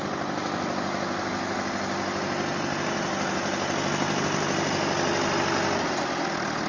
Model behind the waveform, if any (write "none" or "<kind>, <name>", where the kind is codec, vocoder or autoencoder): none